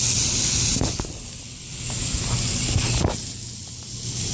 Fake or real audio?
real